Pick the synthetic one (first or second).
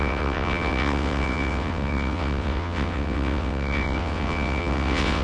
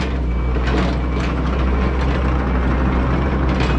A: first